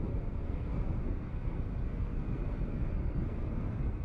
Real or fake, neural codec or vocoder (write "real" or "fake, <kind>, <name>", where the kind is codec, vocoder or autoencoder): fake, codec, SNAC